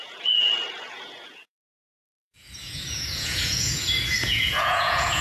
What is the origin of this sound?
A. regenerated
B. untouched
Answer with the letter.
A